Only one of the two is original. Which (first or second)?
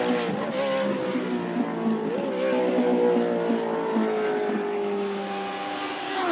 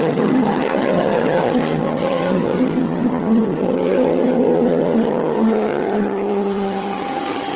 first